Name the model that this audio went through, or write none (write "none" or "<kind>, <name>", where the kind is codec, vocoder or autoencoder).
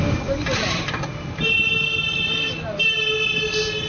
none